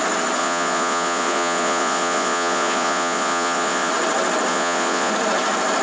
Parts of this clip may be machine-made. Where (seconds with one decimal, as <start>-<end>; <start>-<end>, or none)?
0.4-3.9; 4.5-5.1